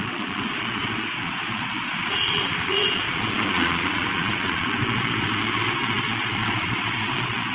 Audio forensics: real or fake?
fake